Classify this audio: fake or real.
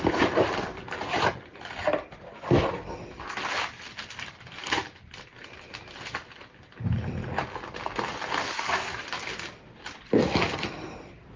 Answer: real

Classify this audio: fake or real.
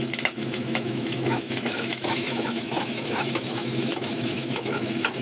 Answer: fake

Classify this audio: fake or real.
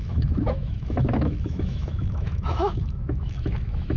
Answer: fake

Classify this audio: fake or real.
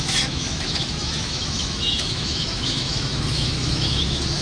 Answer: fake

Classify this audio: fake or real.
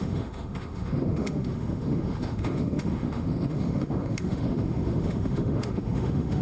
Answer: fake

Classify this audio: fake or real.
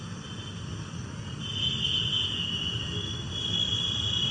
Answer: real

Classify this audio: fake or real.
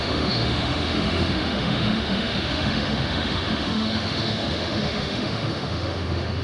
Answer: fake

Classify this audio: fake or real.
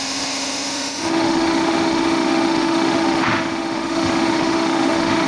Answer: fake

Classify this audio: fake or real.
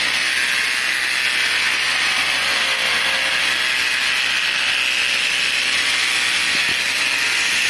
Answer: real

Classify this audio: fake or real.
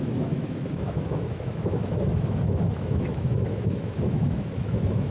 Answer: fake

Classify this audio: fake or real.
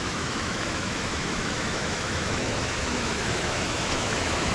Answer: fake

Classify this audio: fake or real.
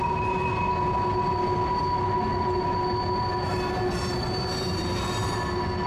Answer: real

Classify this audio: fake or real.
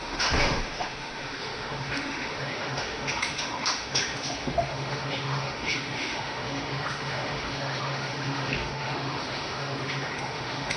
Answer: fake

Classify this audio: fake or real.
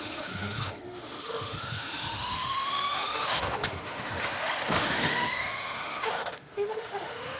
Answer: fake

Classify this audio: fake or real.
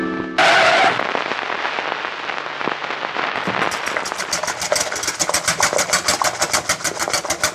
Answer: real